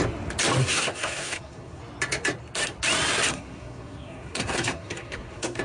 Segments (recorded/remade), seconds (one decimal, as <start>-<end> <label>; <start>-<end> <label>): 0.0-0.6 recorded; 0.6-1.8 remade; 1.8-3.3 recorded; 3.3-5.6 remade